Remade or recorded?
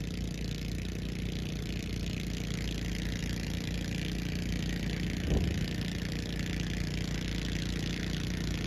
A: recorded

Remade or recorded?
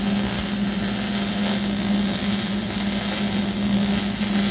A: recorded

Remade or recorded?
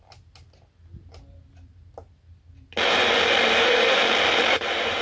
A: recorded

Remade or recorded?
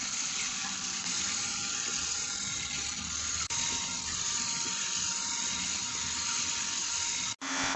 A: recorded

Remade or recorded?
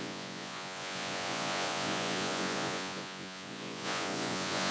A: remade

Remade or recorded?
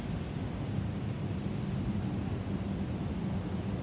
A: recorded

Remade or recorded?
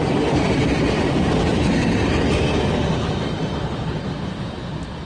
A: recorded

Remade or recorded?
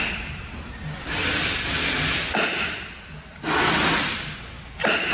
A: recorded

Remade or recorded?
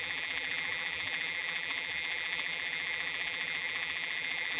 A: remade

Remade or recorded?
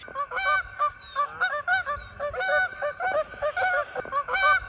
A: recorded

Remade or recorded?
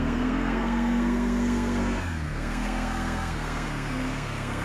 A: remade